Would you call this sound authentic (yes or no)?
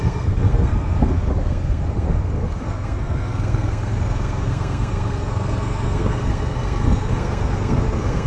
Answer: no